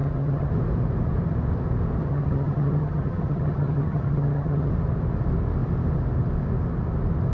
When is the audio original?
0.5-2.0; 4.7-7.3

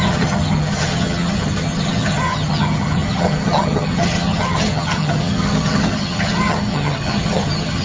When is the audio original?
none

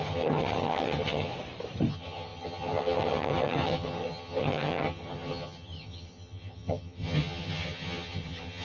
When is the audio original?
1.3-1.9

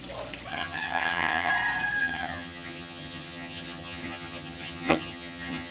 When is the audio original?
0.0-0.5; 1.5-2.0